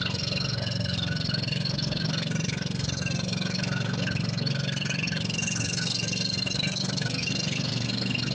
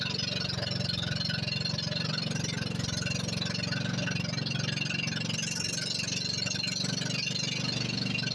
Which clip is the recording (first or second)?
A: second